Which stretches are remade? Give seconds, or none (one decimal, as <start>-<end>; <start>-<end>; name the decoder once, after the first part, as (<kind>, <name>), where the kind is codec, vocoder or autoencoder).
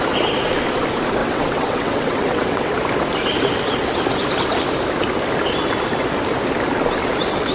1.2-2.7 (vocoder, WaveNeXt)